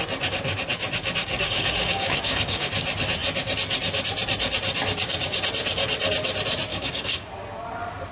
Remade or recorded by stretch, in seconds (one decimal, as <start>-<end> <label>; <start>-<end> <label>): 0.0-1.2 recorded; 1.2-2.7 remade; 2.7-6.7 recorded; 6.7-7.3 remade; 7.3-8.1 recorded